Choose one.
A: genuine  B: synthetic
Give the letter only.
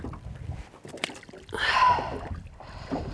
A